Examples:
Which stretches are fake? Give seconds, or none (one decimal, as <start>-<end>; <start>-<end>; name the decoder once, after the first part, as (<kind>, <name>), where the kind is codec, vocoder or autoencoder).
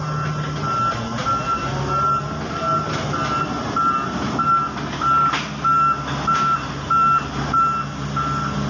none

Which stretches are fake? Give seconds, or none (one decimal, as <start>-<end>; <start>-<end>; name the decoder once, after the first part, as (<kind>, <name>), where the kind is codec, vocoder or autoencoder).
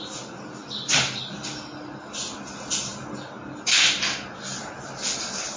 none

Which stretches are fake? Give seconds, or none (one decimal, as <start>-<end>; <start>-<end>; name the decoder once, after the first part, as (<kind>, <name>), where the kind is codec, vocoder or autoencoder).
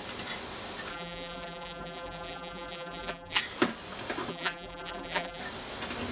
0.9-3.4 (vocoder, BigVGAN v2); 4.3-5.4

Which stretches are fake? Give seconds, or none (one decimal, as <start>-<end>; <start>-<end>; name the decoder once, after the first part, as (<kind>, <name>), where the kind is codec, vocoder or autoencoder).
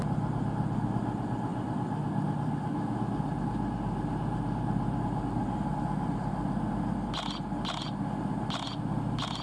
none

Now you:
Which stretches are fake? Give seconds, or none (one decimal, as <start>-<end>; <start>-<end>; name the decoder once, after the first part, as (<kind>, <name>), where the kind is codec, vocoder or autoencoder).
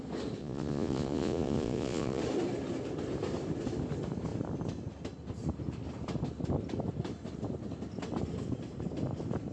0.4-2.2 (vocoder, Vocos)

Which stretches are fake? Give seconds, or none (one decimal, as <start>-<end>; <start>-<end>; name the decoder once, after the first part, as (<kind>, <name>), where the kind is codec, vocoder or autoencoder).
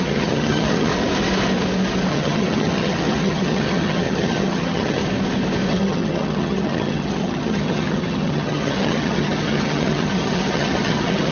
0.0-0.9 (vocoder, HiFi-GAN); 2.1-5.0; 5.7-11.3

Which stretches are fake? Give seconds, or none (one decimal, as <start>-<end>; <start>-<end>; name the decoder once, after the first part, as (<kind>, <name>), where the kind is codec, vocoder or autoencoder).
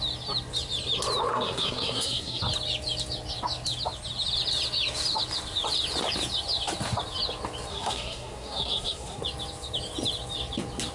1.3-2.4 (codec, SNAC); 7.7-9.2